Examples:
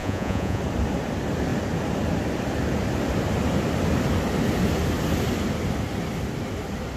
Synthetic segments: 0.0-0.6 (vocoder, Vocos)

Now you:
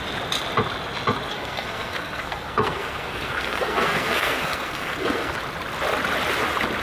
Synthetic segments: 1.3-5.4 (codec, SNAC)